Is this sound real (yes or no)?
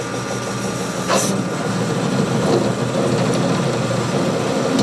yes